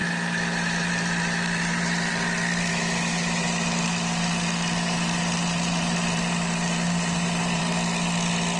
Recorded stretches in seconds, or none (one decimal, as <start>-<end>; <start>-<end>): 2.1-2.7; 7.6-8.6